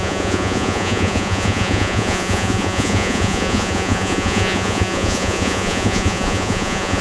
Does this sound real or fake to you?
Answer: fake